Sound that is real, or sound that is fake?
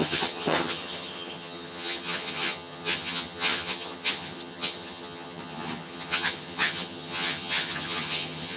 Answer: fake